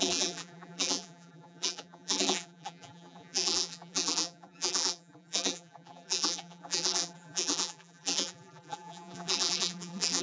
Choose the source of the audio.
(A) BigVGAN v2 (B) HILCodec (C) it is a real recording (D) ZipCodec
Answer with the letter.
A